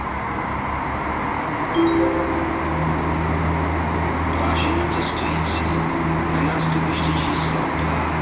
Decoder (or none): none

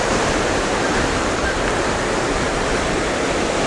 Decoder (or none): vocoder, BigVGAN v2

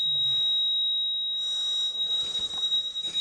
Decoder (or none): none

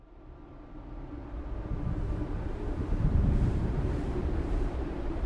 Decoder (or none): vocoder, BigVGAN v2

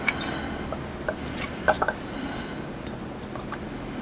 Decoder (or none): none